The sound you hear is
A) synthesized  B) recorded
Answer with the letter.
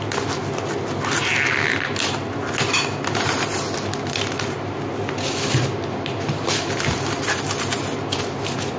B